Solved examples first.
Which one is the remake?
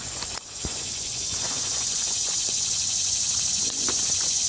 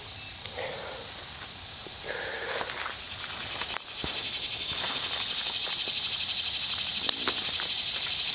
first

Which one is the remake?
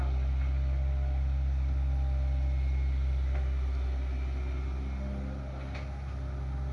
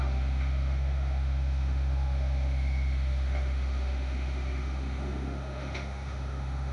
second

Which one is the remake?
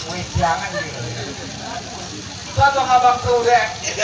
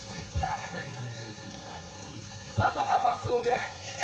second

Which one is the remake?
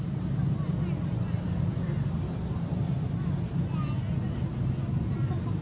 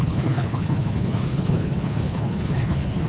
second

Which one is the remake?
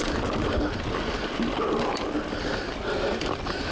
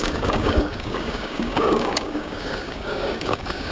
second